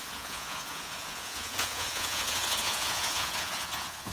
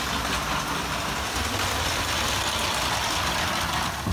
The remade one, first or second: first